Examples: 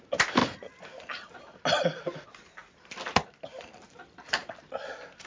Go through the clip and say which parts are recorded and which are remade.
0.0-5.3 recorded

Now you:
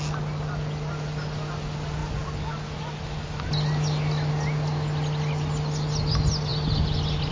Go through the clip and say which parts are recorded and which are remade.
0.0-7.3 recorded

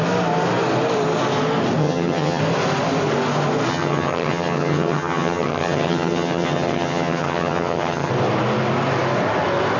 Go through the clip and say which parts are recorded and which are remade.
0.0-1.8 recorded; 1.8-2.4 remade; 2.4-3.7 recorded; 3.7-8.1 remade; 8.1-9.8 recorded